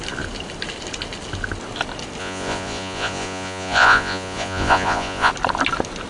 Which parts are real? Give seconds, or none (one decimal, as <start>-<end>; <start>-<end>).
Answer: 0.0-2.2; 5.3-6.1